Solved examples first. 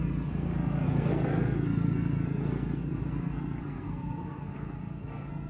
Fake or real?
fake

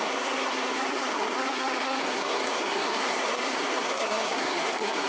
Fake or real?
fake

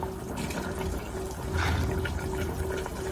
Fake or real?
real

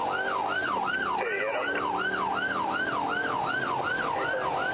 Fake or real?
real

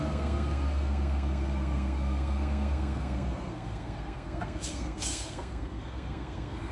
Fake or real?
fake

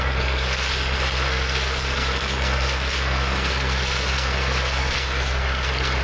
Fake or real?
fake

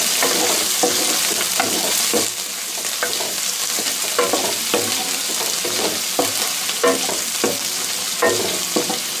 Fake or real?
real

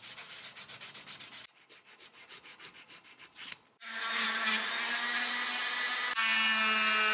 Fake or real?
real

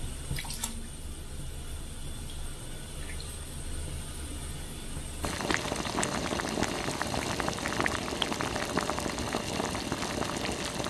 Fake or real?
real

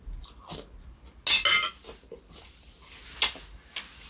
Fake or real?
real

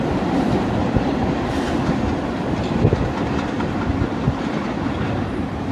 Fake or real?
real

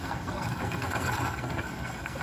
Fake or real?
fake